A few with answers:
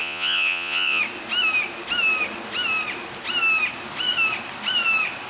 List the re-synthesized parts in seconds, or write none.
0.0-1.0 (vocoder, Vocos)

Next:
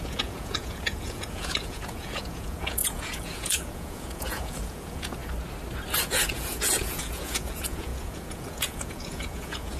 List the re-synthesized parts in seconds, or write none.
0.0-5.2 (vocoder, Vocos); 6.0-9.8

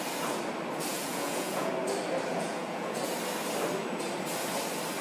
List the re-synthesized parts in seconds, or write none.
0.9-1.7 (vocoder, Vocos); 2.3-3.1

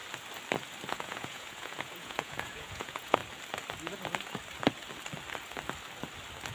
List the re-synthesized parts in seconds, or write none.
0.9-3.2 (vocoder, Vocos)

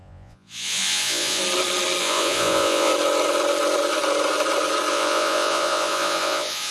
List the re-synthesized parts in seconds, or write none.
0.0-1.4 (vocoder, Vocos); 2.0-2.9; 4.9-6.7

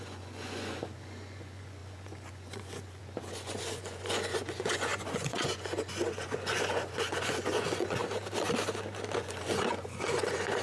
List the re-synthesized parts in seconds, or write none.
0.0-8.0 (vocoder, Vocos); 9.2-10.6

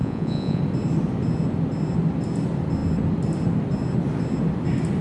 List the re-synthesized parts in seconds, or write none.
0.0-0.6 (vocoder, Vocos)

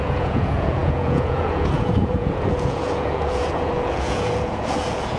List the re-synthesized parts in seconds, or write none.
0.0-5.2 (vocoder, Vocos)